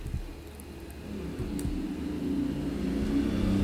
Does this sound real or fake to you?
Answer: real